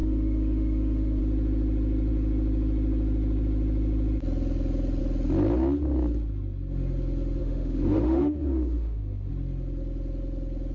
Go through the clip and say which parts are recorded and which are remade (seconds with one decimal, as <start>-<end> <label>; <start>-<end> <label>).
0.0-1.2 remade; 1.2-7.4 recorded; 7.4-9.3 remade; 9.3-10.7 recorded